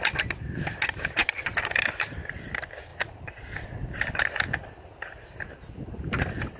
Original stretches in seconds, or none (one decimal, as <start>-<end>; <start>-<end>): 0.0-6.6

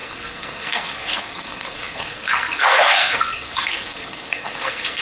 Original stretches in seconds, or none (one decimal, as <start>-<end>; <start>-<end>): none

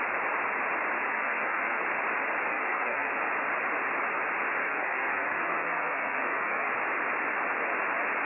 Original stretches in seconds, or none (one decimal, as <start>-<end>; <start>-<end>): 0.0-1.1; 1.8-2.5; 3.1-4.6; 6.7-8.2